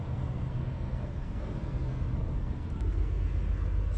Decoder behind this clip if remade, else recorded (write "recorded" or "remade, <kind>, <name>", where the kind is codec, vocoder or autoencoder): remade, codec, SNAC